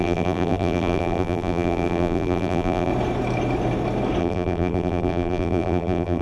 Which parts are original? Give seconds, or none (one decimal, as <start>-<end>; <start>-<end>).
2.9-4.2